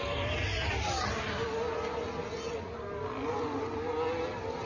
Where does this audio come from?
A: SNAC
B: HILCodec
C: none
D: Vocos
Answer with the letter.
C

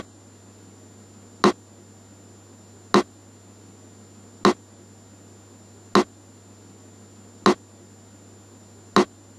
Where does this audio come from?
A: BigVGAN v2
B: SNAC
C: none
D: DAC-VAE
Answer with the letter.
C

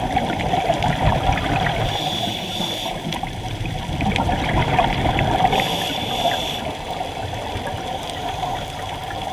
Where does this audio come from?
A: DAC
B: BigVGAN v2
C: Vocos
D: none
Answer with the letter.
B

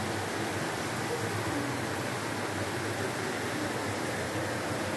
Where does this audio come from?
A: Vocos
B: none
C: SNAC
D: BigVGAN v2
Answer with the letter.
B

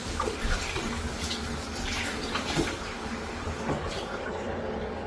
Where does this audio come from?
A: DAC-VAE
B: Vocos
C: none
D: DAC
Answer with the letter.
D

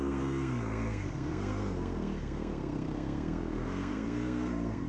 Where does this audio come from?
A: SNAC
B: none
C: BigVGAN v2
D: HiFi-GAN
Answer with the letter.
A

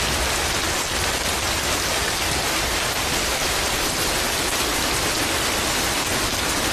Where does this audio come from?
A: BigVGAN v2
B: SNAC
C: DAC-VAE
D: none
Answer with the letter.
D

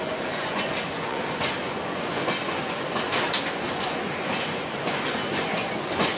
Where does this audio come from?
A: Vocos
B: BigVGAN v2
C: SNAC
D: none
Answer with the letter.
A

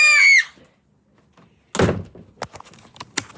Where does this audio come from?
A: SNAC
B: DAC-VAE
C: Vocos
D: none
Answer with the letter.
D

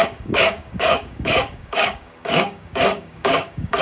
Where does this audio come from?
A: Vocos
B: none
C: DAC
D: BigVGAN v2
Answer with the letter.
C